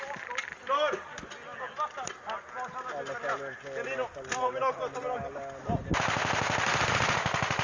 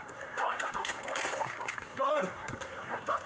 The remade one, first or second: second